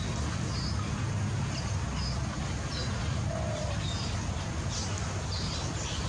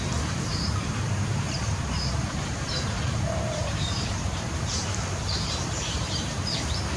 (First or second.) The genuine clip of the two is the first